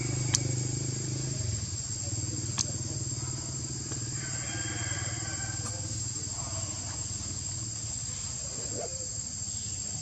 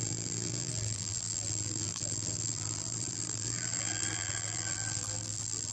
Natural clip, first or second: first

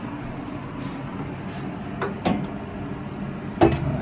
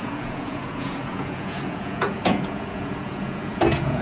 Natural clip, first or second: first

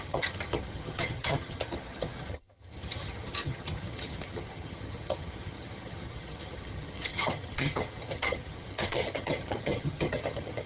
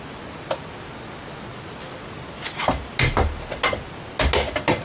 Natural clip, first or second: second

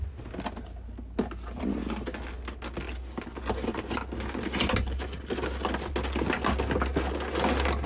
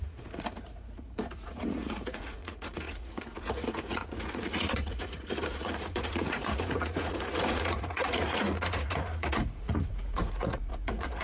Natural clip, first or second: first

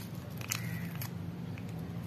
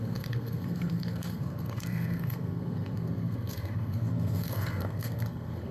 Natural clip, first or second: first